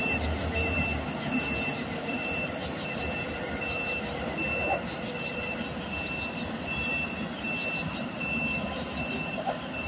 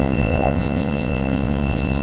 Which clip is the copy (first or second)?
second